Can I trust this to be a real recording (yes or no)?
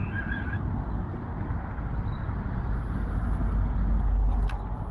yes